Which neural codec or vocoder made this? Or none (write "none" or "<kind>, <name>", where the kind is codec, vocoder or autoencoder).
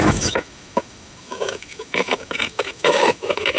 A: autoencoder, DAC-VAE